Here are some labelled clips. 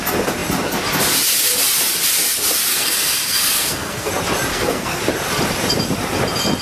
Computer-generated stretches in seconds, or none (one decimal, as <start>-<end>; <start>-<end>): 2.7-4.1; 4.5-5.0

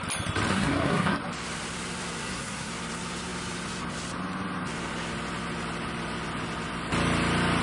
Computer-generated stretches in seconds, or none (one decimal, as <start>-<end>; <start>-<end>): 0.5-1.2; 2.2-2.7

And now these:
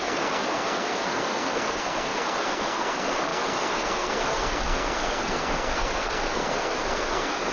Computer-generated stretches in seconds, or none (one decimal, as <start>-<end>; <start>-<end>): 0.0-7.5

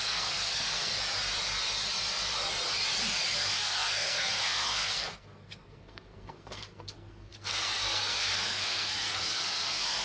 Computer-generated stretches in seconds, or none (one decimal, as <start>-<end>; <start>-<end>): 0.0-0.9; 3.3-10.0

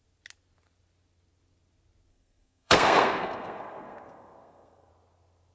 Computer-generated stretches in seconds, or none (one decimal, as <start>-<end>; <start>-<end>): 2.1-4.9